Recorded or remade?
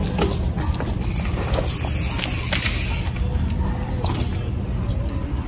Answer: recorded